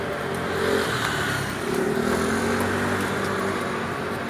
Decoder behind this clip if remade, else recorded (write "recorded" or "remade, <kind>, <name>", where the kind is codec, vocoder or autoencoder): recorded